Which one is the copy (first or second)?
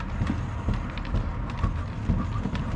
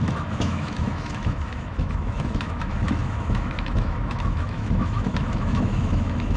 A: second